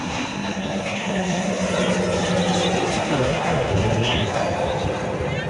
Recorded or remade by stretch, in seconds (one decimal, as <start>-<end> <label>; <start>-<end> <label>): 0.0-1.5 remade; 1.5-2.9 recorded; 2.9-4.4 remade; 4.4-5.5 recorded

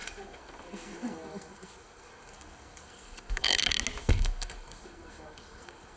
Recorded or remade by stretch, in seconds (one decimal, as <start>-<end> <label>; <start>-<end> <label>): 0.0-3.6 remade; 3.6-4.0 recorded; 4.0-6.0 remade

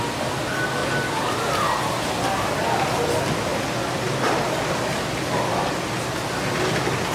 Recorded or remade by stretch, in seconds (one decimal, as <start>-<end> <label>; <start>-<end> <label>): 0.0-7.1 recorded

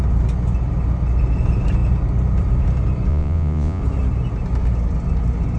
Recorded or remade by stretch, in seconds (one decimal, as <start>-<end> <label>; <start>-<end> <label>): 0.0-3.1 recorded; 3.1-3.8 remade; 3.8-5.6 recorded

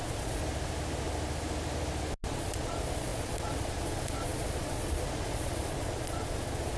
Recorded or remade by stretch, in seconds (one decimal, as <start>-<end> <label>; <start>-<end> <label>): 0.0-0.4 remade; 0.4-2.3 recorded; 2.3-6.8 remade